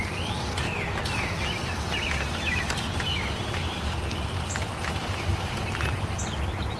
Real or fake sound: real